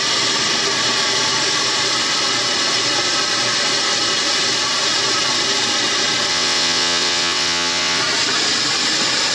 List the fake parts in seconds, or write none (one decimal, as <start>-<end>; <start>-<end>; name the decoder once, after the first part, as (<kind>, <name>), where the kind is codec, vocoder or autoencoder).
6.3-8.0 (vocoder, WaveNeXt)

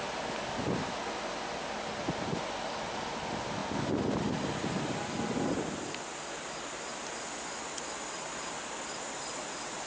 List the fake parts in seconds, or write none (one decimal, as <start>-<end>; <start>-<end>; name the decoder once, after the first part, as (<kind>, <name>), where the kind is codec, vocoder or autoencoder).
none

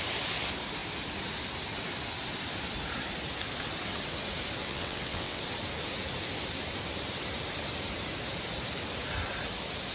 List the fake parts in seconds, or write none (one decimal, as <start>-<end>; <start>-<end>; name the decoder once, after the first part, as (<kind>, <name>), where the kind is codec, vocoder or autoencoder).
4.6-5.4 (vocoder, WaveNeXt)

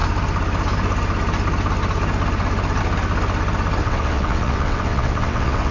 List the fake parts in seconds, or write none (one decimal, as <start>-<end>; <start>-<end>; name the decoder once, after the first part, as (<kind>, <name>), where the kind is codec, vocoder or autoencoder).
3.8-5.7 (vocoder, WaveNeXt)

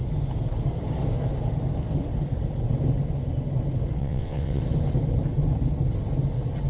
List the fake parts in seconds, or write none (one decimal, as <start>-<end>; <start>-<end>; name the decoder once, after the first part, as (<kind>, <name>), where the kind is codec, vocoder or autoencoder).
4.0-4.6 (vocoder, WaveNeXt)

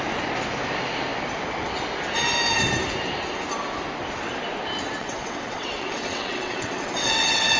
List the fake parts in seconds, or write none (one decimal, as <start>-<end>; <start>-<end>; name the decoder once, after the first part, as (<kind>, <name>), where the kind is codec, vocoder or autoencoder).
5.0-7.6 (vocoder, WaveNeXt)

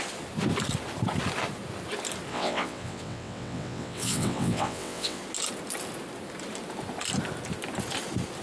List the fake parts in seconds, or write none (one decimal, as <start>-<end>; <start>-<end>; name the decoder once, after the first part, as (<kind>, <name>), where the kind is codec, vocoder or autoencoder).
2.3-5.2 (vocoder, WaveNeXt)